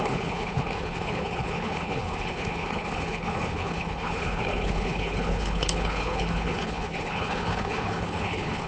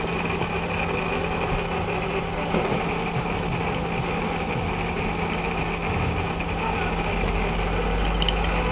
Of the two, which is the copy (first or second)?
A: first